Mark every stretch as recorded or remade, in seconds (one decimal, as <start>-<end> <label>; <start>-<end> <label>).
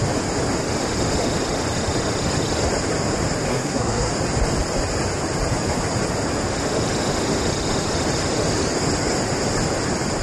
0.0-3.5 recorded; 3.5-4.1 remade; 4.1-10.2 recorded